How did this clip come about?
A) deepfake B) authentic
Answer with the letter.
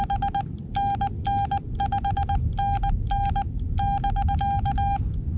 B